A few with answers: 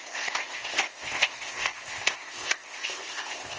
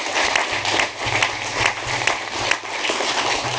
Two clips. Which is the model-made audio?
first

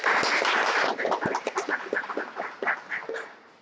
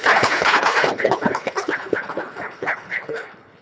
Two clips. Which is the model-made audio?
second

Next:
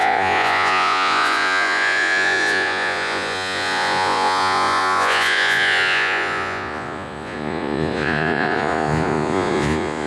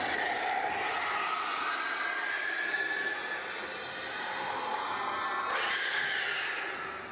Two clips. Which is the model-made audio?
first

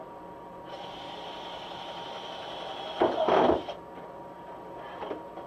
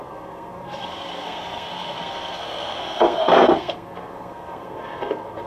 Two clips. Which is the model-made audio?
second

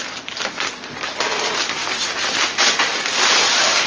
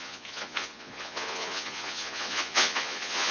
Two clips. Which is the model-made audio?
second